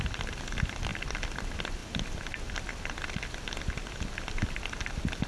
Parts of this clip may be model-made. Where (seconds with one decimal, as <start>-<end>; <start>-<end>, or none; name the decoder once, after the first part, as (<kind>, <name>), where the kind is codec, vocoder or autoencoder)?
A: none